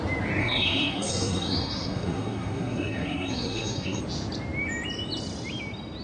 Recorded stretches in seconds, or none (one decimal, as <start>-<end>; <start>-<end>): 0.0-0.4; 4.0-6.0